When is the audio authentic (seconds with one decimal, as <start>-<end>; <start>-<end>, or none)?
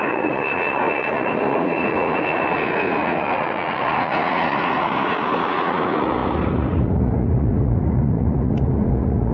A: none